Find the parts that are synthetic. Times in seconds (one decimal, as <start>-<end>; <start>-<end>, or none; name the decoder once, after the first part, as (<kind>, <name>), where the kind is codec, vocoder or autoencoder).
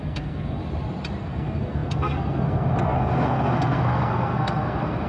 0.0-0.6 (codec, SNAC); 1.2-5.1